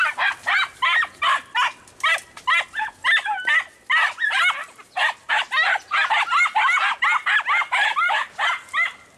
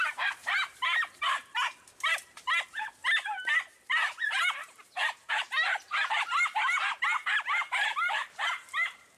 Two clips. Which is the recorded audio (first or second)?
first